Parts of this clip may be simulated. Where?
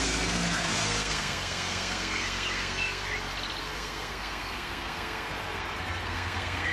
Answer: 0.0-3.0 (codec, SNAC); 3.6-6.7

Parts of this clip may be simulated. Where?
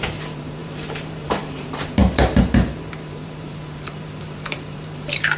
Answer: 0.0-5.4 (vocoder, BigVGAN v2)